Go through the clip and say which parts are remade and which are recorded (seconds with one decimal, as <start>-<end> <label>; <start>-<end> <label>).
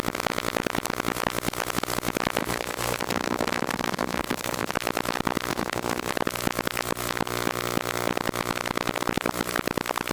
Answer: 0.0-2.4 recorded; 2.4-4.7 remade; 4.7-5.5 recorded; 5.5-6.1 remade; 6.1-10.1 recorded